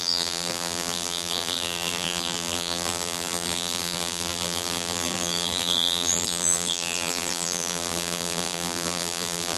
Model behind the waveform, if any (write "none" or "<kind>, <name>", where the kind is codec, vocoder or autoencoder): vocoder, BigVGAN v2